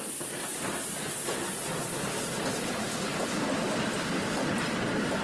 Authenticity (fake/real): real